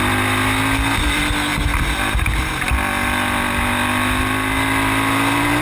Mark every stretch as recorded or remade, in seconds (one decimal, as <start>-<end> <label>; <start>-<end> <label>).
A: 0.0-5.6 recorded